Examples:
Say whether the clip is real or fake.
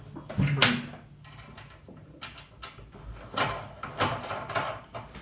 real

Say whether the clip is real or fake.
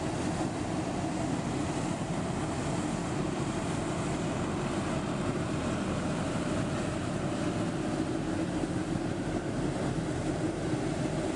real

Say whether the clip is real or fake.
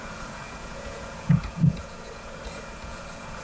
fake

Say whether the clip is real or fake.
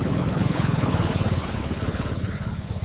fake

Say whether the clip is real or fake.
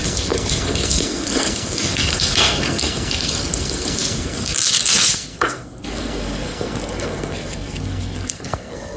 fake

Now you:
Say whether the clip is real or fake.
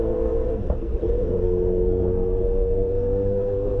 fake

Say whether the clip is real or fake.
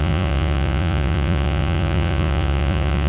fake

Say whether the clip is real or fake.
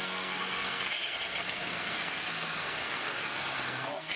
fake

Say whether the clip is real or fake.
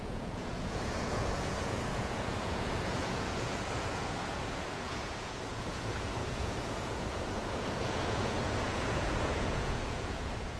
fake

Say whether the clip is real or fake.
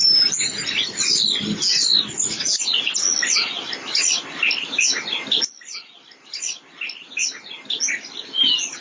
real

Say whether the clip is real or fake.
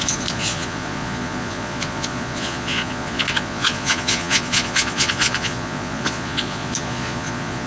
fake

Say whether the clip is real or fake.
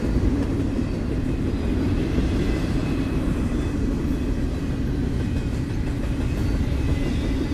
real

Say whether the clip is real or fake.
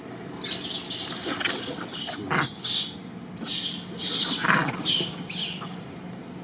real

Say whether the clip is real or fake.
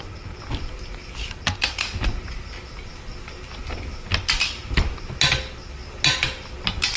real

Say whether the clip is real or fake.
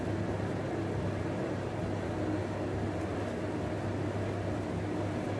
real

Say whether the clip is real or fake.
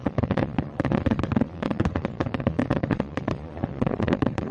fake